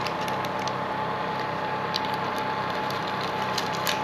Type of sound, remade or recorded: recorded